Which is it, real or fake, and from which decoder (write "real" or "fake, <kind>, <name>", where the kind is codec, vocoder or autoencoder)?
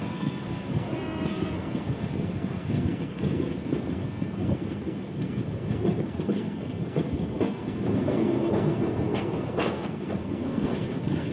fake, codec, SNAC